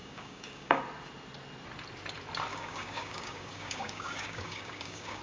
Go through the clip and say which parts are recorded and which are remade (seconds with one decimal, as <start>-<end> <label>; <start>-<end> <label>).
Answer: 0.0-0.8 remade; 0.8-2.5 recorded; 2.5-5.2 remade